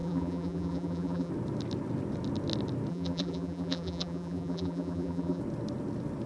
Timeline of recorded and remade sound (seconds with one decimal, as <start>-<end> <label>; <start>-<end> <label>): 0.0-1.3 remade; 1.3-2.9 recorded; 2.9-5.4 remade; 5.4-6.3 recorded